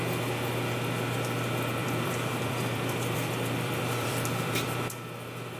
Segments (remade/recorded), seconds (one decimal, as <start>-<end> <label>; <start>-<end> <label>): 0.0-1.8 recorded; 1.8-4.7 remade; 4.7-5.6 recorded

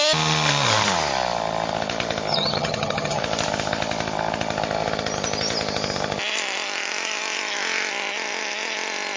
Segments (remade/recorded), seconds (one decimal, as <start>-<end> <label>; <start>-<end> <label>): 0.0-2.3 recorded; 2.3-3.2 remade; 3.2-9.2 recorded

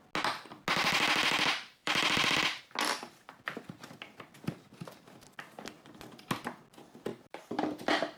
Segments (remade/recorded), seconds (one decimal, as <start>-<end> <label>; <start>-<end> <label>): 0.0-1.8 recorded; 1.8-2.6 remade; 2.6-7.1 recorded; 7.1-7.6 remade; 7.6-8.2 recorded

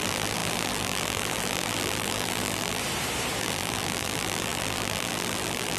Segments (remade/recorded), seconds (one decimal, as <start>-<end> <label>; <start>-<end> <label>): 0.0-2.8 remade; 2.8-3.4 recorded; 3.4-5.8 remade

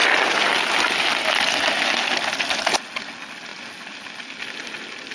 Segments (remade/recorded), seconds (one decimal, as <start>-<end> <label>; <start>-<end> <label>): 0.0-5.1 recorded